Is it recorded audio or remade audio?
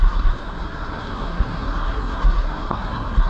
remade